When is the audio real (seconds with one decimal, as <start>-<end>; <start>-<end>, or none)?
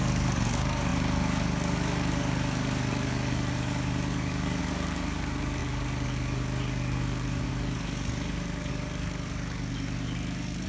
none